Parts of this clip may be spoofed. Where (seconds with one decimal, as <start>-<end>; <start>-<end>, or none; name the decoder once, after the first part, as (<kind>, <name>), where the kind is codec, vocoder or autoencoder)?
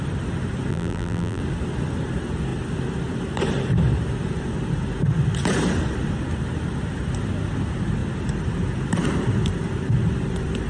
0.7-1.4 (vocoder, BigVGAN v2)